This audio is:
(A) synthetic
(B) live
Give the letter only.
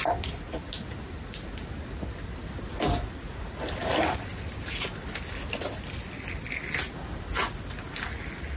B